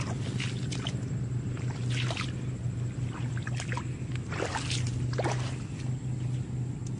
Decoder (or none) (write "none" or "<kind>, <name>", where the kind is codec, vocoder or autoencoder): none